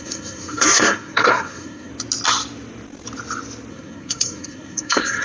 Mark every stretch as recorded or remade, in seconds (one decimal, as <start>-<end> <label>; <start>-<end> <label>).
0.0-1.9 remade; 1.9-3.7 recorded; 3.7-5.2 remade